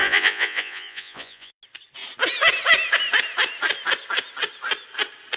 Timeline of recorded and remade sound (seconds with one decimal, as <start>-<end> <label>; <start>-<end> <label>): 0.0-1.6 remade; 1.6-5.4 recorded